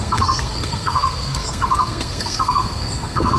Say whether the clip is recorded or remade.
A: remade